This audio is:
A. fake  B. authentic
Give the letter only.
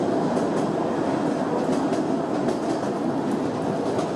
B